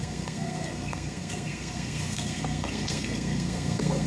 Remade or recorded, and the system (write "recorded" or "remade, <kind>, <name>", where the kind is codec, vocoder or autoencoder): remade, codec, SNAC